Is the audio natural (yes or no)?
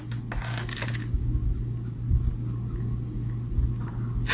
yes